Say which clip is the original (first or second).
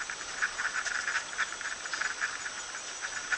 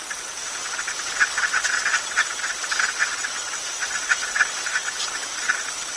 first